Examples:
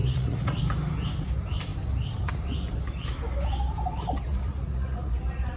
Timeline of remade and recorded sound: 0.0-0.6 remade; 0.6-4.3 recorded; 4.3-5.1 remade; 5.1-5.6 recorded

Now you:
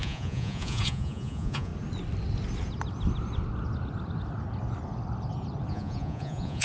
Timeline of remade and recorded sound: 0.0-1.7 remade; 1.7-5.7 recorded; 5.7-6.6 remade